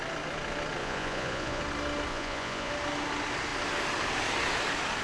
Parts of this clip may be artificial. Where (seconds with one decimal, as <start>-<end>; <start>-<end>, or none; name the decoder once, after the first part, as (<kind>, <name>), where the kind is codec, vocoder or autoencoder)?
0.8-1.6 (vocoder, Vocos); 2.1-2.7